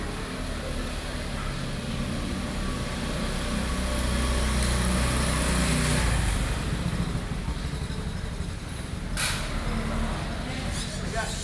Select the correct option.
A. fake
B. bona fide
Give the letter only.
B